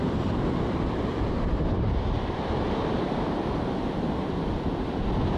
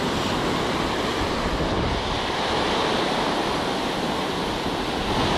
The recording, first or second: second